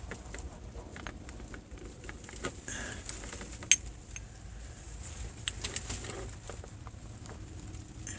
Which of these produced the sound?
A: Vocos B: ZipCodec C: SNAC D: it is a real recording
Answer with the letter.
D